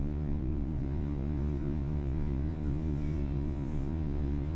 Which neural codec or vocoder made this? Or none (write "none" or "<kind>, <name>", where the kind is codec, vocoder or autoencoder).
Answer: vocoder, Vocos